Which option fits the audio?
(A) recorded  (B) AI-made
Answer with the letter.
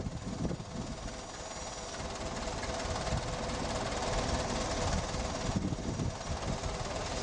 A